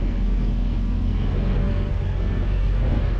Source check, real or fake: fake